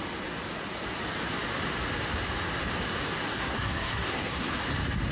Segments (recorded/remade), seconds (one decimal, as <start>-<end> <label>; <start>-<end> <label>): 0.0-3.3 recorded; 3.3-4.6 remade; 4.6-5.1 recorded